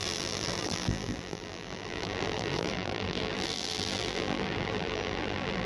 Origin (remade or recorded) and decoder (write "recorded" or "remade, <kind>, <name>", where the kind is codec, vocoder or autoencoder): remade, vocoder, BigVGAN v2